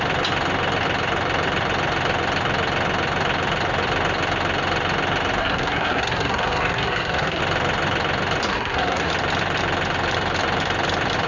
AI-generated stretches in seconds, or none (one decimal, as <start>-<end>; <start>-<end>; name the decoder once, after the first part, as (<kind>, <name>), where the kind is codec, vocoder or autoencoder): 5.4-7.4 (codec, SNAC); 8.5-9.1

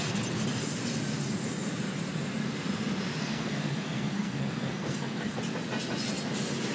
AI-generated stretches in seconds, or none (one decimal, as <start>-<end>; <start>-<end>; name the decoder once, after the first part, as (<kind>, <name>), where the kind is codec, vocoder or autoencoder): 3.2-5.4 (codec, SNAC)

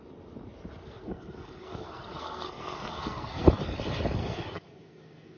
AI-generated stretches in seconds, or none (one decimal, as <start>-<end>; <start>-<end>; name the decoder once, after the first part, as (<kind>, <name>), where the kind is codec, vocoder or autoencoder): 0.8-3.5 (codec, SNAC); 4.2-5.4

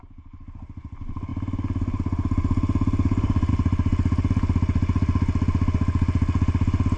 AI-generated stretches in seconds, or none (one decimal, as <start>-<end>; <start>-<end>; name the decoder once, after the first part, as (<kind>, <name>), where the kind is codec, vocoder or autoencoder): none

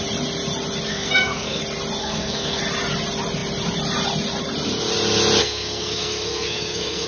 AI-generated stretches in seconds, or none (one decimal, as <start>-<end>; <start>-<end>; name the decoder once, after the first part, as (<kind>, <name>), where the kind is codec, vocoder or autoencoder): 0.9-1.6 (codec, SNAC); 2.0-2.6; 5.4-7.1

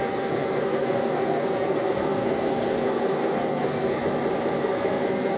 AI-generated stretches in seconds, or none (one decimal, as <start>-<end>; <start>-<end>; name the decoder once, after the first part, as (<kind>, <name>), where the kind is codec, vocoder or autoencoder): 0.0-4.0 (codec, SNAC); 4.6-5.4